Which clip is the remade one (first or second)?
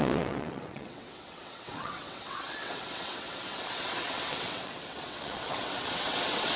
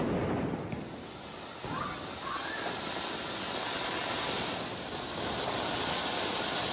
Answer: first